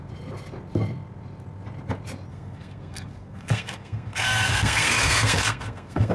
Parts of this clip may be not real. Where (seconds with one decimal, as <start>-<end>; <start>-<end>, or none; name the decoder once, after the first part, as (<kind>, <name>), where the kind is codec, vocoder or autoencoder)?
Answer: 2.3-6.1 (codec, SNAC)